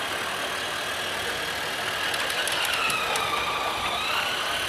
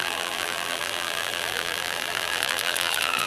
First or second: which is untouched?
first